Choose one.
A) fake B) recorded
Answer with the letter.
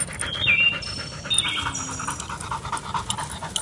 B